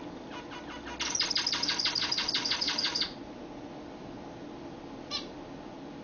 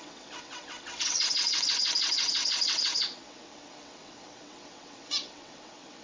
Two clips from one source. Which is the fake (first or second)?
second